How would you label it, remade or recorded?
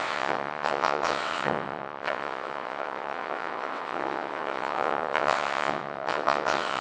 remade